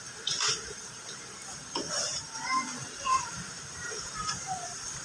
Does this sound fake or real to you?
fake